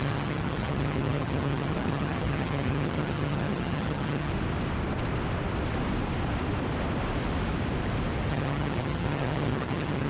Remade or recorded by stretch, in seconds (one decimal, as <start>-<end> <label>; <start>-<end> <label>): 0.0-4.3 remade; 4.3-8.3 recorded; 8.3-10.1 remade